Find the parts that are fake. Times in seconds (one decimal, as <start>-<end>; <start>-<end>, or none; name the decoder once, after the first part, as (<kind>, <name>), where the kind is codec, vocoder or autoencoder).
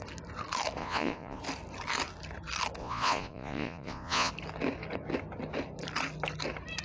0.8-1.4 (vocoder, Vocos); 2.8-4.3